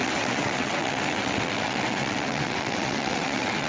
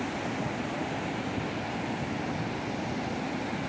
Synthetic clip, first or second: first